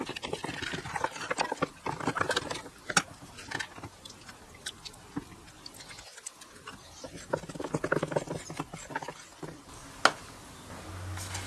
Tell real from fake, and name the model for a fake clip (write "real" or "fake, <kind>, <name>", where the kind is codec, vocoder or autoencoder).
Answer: real